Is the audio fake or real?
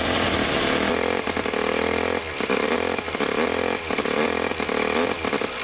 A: fake